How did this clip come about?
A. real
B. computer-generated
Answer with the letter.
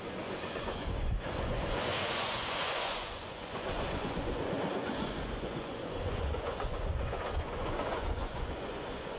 B